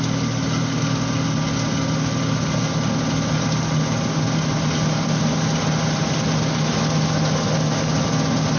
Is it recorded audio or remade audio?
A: recorded